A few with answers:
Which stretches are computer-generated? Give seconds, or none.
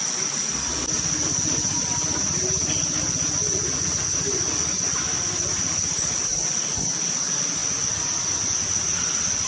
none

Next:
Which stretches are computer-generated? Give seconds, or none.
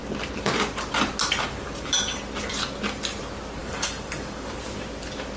3.6-4.5 (codec, DAC)